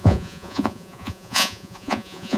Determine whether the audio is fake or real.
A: fake